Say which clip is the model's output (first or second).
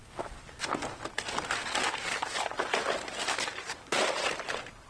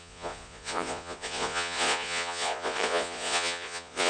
second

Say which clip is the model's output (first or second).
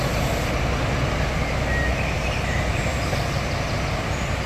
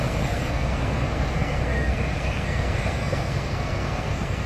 second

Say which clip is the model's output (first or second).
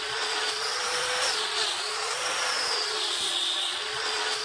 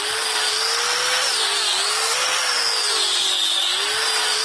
first